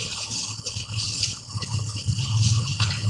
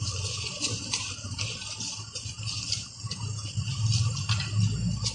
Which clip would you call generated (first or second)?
first